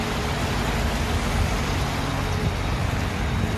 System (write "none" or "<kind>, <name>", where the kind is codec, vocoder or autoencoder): none